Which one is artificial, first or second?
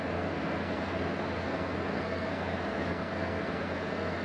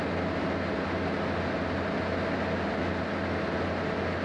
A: first